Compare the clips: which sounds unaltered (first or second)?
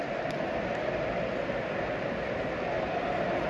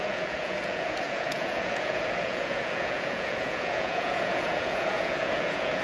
first